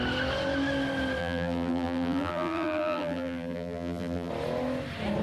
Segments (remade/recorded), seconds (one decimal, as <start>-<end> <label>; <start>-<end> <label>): 0.0-1.2 recorded; 1.2-4.3 remade; 4.3-5.2 recorded